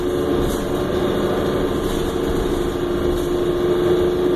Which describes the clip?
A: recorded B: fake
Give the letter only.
A